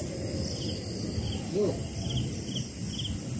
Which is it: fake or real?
real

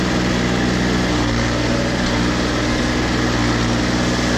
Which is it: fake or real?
real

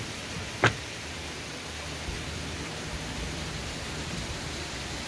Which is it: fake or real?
real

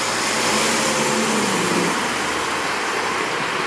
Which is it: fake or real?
real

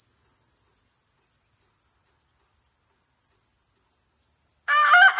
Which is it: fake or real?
real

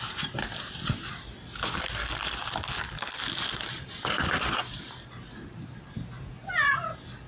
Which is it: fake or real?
real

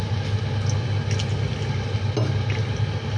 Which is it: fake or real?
real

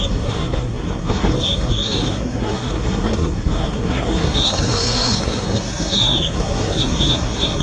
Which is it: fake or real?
fake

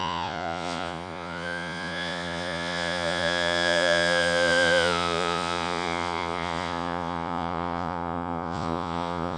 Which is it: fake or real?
fake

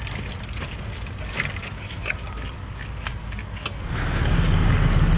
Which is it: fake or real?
real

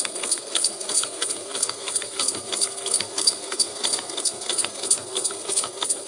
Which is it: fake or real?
fake